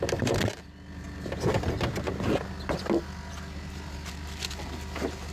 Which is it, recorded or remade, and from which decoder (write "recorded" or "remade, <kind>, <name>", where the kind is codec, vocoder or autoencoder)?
recorded